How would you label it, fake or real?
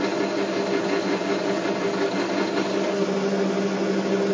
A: real